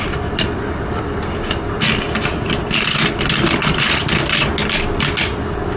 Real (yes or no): yes